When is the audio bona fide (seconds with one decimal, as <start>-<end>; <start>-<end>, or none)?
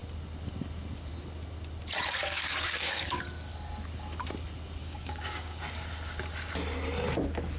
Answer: 0.0-2.2; 3.2-4.8; 5.6-7.6